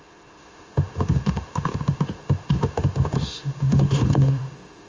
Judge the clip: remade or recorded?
remade